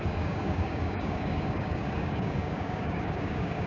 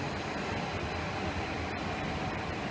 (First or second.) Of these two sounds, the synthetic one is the first